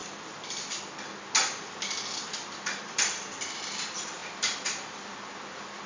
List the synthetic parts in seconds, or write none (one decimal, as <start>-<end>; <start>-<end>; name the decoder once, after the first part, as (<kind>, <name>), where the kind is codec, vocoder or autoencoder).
2.7-5.9 (vocoder, BigVGAN v2)